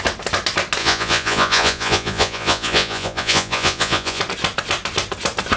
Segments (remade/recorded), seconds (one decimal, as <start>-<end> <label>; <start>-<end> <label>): 0.0-0.8 recorded; 0.8-4.2 remade; 4.2-5.6 recorded